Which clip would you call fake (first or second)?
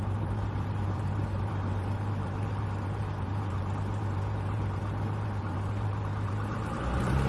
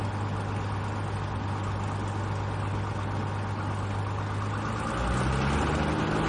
first